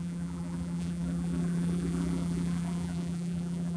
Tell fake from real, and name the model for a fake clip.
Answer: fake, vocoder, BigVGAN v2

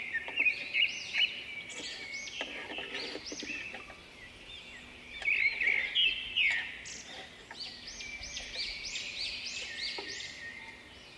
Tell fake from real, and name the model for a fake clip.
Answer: real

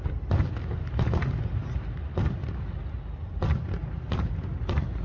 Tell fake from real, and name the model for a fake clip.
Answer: real